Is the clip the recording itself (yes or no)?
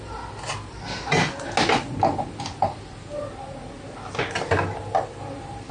yes